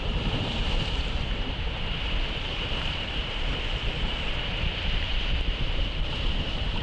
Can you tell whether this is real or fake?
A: fake